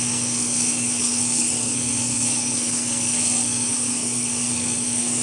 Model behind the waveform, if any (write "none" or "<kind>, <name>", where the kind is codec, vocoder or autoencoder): codec, SNAC